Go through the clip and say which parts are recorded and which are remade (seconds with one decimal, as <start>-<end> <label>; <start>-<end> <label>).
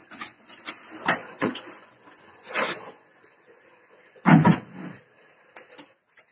0.0-0.7 remade; 0.7-1.2 recorded; 1.2-5.0 remade; 5.0-6.3 recorded